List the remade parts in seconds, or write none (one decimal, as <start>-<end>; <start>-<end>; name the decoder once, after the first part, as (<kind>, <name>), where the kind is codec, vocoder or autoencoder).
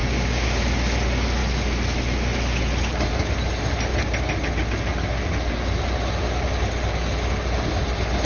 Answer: 0.0-0.6 (codec, DAC)